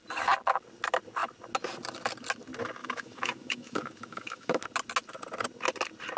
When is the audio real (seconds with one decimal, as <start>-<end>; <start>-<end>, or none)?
0.0-2.8; 4.6-6.2